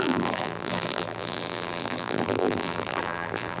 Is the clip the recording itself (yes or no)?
no